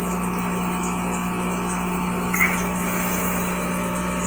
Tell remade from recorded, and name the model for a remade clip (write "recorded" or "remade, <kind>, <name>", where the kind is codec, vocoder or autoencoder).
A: remade, autoencoder, DAC-VAE